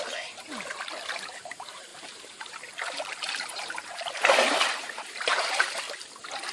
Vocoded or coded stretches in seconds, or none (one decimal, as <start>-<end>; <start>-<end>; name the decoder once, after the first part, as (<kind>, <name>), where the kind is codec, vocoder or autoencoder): 1.9-5.8 (vocoder, BigVGAN v2)